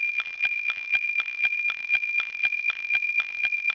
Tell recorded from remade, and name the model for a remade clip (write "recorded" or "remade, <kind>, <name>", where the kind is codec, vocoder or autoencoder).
remade, vocoder, BigVGAN v2